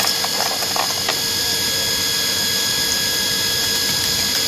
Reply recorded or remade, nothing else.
recorded